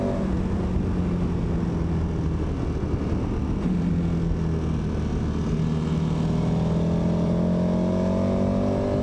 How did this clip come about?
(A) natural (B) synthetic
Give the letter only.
A